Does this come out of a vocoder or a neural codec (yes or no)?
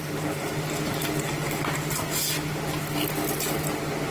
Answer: no